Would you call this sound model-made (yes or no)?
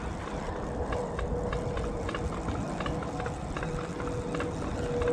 no